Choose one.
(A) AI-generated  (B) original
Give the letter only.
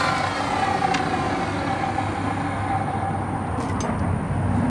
B